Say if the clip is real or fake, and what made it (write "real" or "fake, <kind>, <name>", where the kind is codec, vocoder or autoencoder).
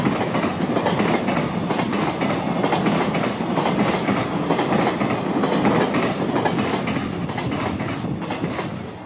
real